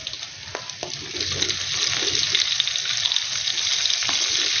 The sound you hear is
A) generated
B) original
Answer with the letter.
B